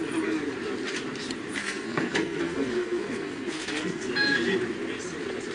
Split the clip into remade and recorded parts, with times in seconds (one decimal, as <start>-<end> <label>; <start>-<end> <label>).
0.0-1.6 recorded; 1.6-4.1 remade; 4.1-5.5 recorded

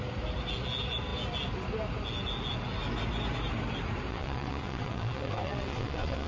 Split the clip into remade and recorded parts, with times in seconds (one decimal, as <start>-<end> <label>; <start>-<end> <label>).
0.0-4.1 recorded; 4.1-6.3 remade

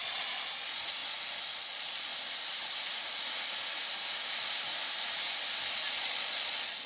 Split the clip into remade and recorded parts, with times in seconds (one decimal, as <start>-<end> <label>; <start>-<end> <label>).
0.0-1.0 remade; 1.0-1.6 recorded; 1.6-2.1 remade; 2.1-5.7 recorded; 5.7-6.9 remade

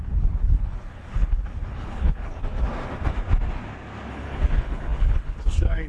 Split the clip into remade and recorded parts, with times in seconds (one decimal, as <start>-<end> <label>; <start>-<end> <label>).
0.0-2.4 remade; 2.4-4.1 recorded; 4.1-5.9 remade

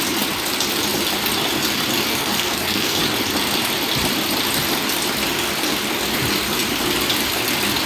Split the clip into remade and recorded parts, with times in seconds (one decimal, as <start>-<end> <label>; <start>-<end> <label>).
0.0-2.1 recorded; 2.1-3.0 remade; 3.0-7.9 recorded

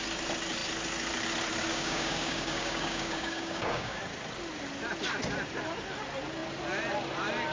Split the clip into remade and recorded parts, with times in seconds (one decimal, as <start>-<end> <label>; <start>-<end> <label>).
0.0-1.7 recorded; 1.7-4.0 remade; 4.0-7.5 recorded